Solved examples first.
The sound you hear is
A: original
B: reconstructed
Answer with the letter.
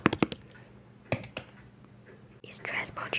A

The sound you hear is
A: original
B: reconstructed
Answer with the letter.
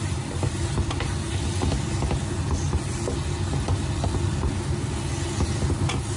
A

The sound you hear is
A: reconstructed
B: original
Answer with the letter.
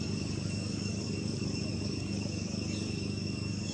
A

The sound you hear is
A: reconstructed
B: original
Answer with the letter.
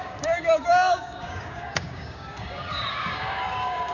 A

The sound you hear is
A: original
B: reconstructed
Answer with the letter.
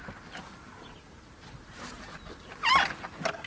A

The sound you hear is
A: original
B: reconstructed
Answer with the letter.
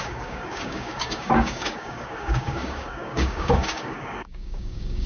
B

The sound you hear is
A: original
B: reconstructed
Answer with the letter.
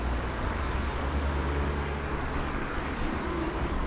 B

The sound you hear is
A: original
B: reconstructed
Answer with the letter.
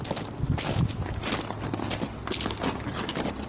A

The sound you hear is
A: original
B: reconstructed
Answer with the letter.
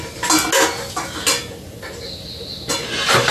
A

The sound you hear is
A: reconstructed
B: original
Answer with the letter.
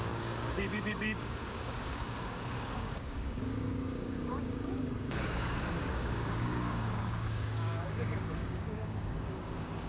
A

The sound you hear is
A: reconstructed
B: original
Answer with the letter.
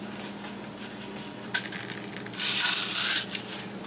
B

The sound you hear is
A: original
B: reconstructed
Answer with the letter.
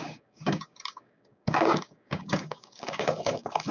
B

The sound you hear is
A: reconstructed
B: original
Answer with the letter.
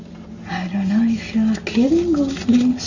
B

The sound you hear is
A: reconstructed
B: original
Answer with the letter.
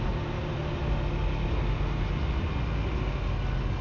B